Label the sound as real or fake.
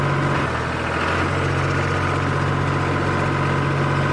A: real